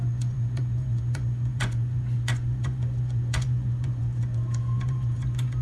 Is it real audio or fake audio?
fake